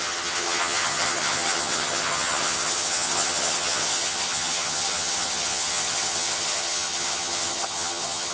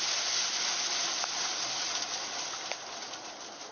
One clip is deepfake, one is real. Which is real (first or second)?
second